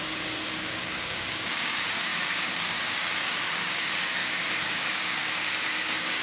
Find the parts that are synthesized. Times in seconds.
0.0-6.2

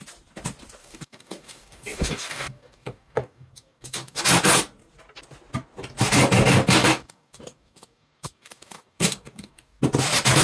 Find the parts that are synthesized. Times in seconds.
0.8-4.2; 6.8-9.8

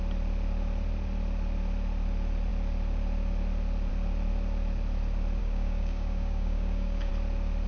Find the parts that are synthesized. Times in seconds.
5.4-7.1

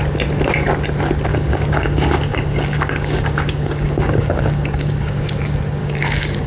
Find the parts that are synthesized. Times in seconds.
1.3-5.2; 5.8-6.5

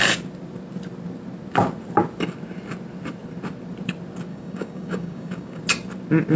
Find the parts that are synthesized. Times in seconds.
4.3-5.6

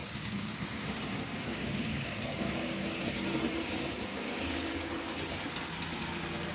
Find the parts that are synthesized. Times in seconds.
0.0-3.0; 4.1-4.9

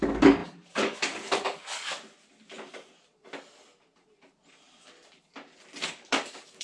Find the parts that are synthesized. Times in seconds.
0.0-1.9; 5.9-6.6